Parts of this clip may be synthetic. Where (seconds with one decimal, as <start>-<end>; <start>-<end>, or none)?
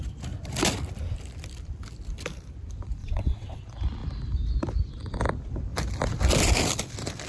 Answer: 3.0-3.6